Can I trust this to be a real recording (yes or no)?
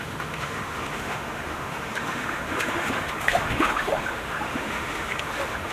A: no